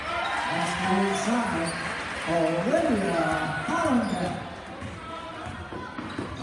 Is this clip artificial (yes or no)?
no